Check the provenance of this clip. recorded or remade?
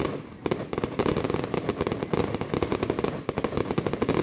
recorded